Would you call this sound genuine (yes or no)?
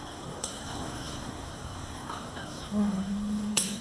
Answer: no